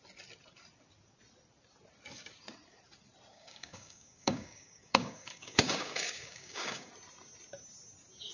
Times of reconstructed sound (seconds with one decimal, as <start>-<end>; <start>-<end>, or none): 3.3-6.9